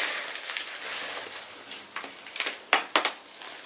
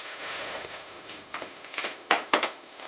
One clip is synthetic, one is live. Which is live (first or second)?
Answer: first